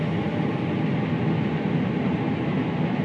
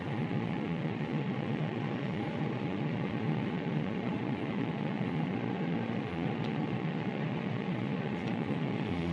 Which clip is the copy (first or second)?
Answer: second